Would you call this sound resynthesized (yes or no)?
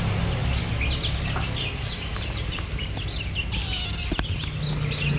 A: no